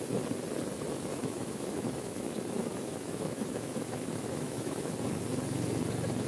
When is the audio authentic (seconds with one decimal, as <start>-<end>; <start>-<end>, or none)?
0.0-1.1; 4.9-6.3